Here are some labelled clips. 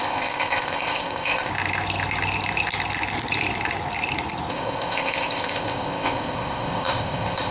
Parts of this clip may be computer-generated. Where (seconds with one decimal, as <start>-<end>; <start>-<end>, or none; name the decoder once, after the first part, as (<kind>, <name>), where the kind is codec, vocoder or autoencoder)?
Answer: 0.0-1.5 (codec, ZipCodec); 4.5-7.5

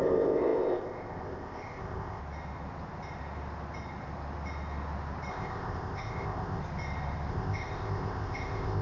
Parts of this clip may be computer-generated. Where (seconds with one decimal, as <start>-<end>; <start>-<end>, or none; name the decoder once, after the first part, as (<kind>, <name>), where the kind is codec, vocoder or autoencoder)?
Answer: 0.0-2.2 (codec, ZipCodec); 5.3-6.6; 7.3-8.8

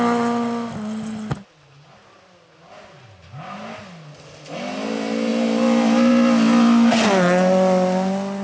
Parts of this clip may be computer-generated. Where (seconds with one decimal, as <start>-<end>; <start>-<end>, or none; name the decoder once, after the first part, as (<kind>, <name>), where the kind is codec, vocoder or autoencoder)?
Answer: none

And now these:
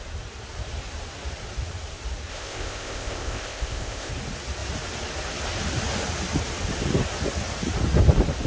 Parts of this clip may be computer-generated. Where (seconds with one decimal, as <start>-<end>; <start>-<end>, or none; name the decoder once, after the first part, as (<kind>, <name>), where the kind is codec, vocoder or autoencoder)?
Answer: 2.3-4.1 (codec, ZipCodec)

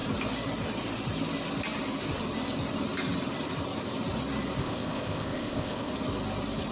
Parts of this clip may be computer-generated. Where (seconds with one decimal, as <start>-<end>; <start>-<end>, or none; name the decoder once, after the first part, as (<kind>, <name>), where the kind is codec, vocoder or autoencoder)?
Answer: 4.6-5.9 (codec, ZipCodec)

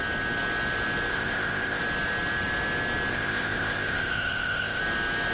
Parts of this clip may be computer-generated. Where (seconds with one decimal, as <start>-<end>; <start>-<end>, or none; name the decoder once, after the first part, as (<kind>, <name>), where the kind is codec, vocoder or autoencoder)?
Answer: 1.1-1.8 (codec, ZipCodec); 3.1-4.8

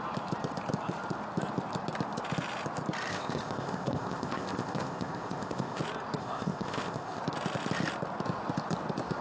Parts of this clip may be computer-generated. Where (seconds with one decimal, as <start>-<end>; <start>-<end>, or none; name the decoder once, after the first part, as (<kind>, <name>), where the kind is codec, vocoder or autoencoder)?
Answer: 3.1-5.8 (codec, ZipCodec); 6.2-7.2